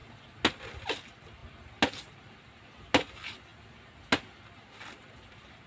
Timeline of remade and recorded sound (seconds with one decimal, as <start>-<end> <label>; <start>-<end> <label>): 0.0-5.7 recorded